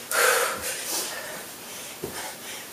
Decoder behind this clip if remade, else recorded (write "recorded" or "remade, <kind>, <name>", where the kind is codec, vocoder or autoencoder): remade, vocoder, BigVGAN v2